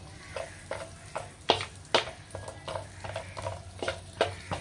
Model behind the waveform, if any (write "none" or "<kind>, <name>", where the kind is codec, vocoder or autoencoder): none